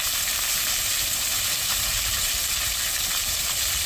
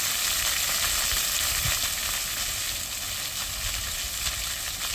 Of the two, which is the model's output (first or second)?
first